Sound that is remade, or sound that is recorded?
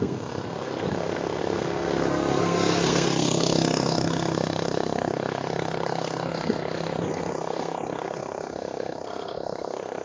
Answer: remade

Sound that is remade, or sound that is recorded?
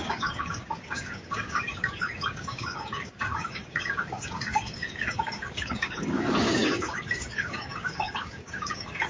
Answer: remade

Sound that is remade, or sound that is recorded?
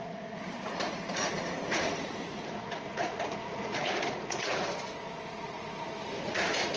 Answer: remade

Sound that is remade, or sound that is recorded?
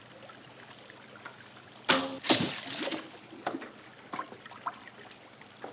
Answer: recorded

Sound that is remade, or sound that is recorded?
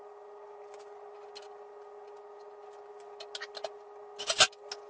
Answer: recorded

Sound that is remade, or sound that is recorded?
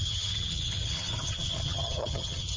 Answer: remade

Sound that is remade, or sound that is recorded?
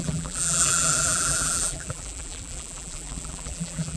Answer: remade